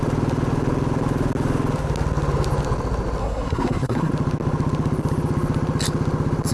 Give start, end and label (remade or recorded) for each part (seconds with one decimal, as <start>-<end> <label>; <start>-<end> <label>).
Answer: 0.0-3.2 recorded; 3.2-4.1 remade; 4.1-6.5 recorded